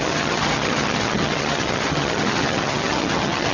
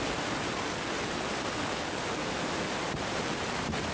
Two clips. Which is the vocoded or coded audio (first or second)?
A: first